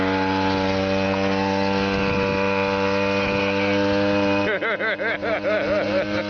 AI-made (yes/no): no